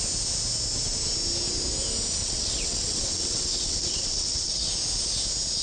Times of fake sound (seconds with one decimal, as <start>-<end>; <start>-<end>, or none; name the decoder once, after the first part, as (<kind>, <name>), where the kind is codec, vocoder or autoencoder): 2.2-4.7 (vocoder, WaveNeXt)